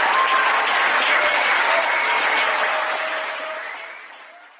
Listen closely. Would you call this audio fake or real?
real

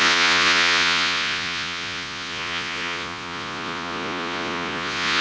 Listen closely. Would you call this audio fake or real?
fake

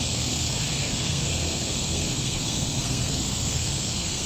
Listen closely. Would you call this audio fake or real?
fake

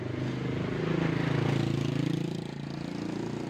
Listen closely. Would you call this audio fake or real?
real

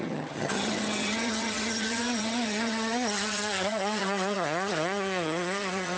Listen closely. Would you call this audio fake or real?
fake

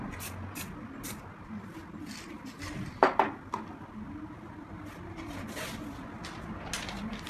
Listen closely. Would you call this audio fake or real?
real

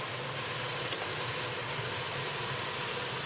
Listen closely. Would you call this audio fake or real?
real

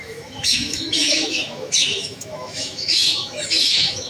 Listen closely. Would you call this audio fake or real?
fake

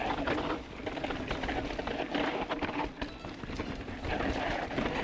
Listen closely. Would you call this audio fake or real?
fake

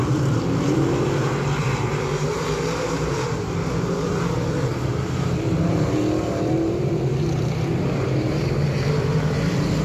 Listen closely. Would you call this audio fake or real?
fake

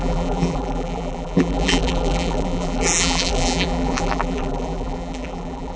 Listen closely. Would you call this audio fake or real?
fake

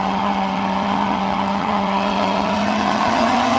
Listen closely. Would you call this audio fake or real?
fake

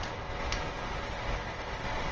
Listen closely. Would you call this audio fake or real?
real